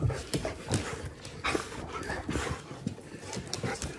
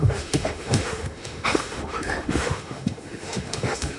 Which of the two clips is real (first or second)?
first